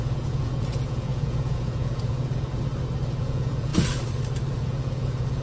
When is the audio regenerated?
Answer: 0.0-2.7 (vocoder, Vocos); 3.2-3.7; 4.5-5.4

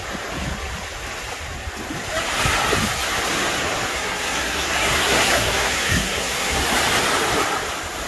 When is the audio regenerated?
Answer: 3.9-6.6 (codec, SNAC)